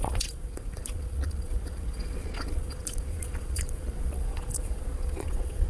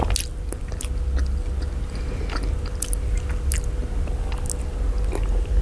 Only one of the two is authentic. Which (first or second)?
second